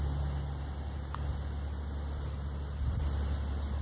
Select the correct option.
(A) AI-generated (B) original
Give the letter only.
B